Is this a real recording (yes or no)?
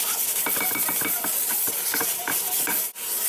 yes